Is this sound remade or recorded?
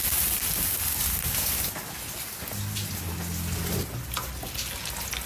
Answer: recorded